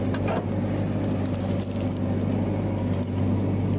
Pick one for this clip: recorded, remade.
recorded